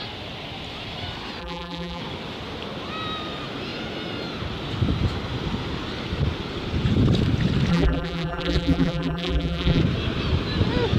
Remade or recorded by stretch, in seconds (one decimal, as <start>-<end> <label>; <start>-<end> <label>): 0.0-1.4 recorded; 1.4-2.0 remade; 2.0-7.7 recorded; 7.7-9.8 remade; 9.8-11.0 recorded